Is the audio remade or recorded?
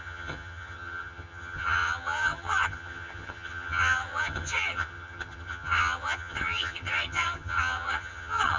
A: remade